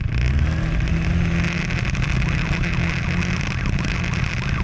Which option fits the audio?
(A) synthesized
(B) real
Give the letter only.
B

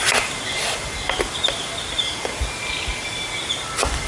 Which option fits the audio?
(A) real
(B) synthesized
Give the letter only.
A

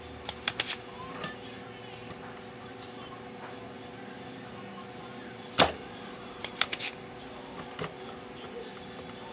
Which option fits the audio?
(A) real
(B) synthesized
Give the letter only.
A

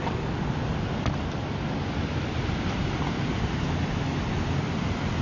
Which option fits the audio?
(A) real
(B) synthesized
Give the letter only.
A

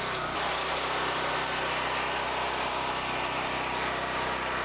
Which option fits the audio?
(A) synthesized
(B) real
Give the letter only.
B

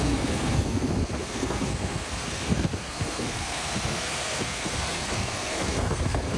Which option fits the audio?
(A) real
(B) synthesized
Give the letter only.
B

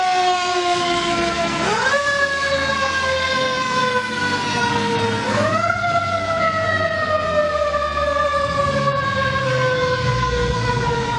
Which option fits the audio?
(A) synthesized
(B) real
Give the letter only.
A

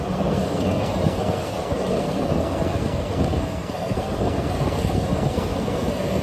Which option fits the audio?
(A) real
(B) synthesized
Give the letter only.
B